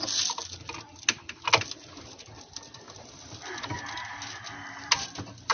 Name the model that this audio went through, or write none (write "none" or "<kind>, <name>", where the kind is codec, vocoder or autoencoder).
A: none